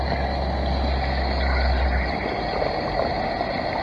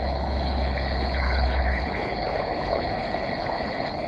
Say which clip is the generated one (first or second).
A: second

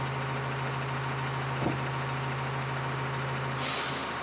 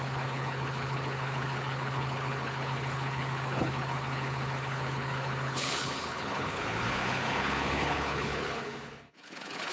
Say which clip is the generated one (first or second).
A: second